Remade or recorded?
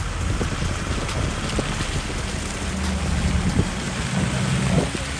recorded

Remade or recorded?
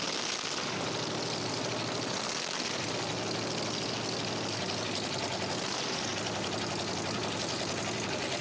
recorded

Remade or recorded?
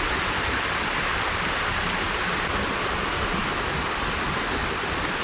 recorded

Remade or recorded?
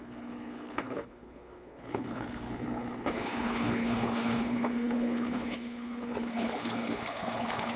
remade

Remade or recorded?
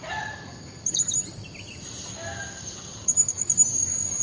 recorded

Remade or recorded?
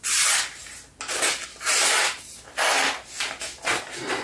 recorded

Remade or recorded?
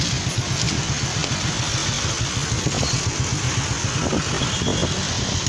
recorded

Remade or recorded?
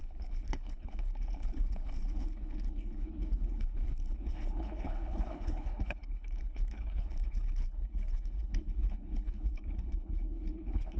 remade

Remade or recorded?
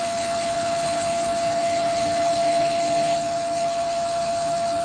remade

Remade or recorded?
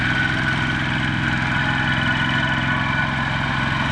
recorded